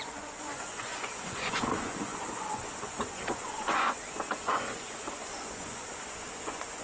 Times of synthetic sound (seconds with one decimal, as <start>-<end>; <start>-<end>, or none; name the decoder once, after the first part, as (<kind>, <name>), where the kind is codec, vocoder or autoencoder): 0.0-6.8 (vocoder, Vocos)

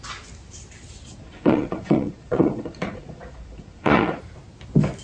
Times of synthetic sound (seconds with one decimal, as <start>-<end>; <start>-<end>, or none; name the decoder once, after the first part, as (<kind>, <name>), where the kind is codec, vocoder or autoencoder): 1.2-4.2 (vocoder, Vocos)

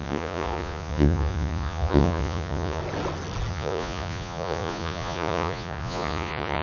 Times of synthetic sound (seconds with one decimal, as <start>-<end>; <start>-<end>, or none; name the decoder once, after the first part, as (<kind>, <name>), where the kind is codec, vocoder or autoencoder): 0.0-2.8 (vocoder, Vocos); 3.5-6.6

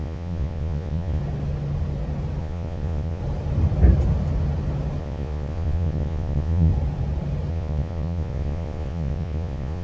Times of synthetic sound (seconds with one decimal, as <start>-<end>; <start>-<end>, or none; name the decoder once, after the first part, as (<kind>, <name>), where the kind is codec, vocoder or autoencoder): 0.0-1.2 (vocoder, Vocos); 2.4-3.2; 5.0-6.7; 7.5-9.8

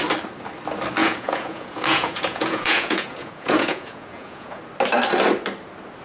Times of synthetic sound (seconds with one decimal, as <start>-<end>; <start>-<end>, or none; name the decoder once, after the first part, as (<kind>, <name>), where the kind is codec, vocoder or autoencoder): 1.0-4.6 (vocoder, Vocos)

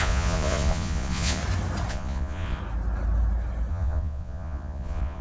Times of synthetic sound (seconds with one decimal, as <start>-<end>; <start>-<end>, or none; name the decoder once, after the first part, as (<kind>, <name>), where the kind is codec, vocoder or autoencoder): 0.0-1.4 (vocoder, Vocos); 1.9-2.6; 3.7-5.2

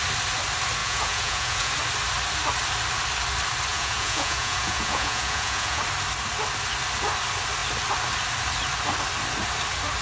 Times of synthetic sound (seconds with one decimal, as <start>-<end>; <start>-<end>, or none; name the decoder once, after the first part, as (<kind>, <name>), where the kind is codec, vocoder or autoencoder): 0.8-1.7 (vocoder, Vocos); 3.7-5.8

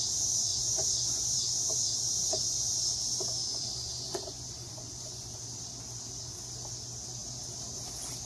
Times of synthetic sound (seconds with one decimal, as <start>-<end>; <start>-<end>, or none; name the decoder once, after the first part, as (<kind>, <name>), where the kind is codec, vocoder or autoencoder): 0.5-1.3 (vocoder, Vocos); 3.4-5.3